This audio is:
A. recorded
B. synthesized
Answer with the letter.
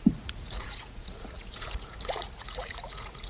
B